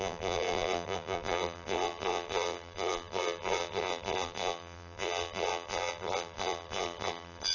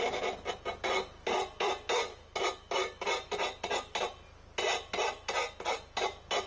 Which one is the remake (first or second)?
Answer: first